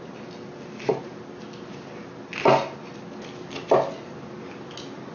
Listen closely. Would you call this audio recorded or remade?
recorded